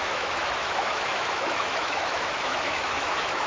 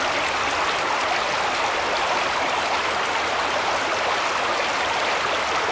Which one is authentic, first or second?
second